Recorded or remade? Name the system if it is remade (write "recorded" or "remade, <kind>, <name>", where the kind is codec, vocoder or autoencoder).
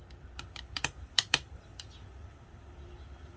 remade, vocoder, BigVGAN v2